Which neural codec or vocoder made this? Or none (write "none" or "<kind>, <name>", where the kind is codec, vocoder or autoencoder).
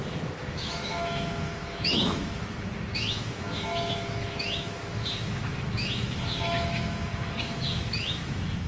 autoencoder, DAC-VAE